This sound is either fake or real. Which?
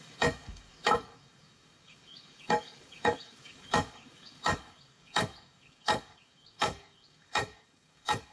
fake